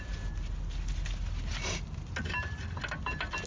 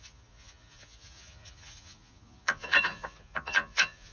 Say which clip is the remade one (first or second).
second